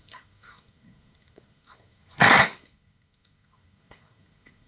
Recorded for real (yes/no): no